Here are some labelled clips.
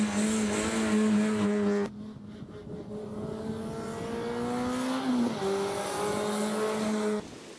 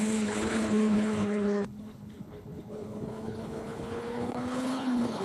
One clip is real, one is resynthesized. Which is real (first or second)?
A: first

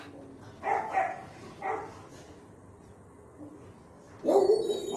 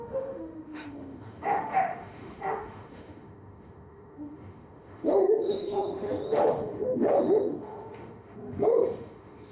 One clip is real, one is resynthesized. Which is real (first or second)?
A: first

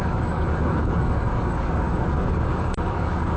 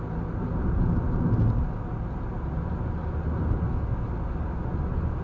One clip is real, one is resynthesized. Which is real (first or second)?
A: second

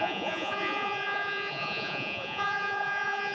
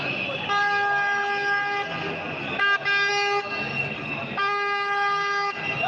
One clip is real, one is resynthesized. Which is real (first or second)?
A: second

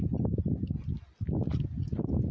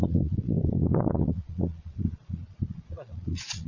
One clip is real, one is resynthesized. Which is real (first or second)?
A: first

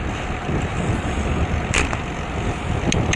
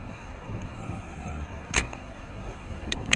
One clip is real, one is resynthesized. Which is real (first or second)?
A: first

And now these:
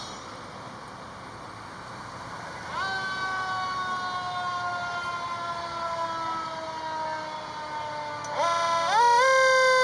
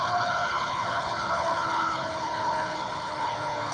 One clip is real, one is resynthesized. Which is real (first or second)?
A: first